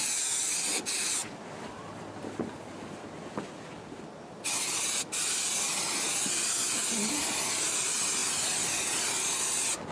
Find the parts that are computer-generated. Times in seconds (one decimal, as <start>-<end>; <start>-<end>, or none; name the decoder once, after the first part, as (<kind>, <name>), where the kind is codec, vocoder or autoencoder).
none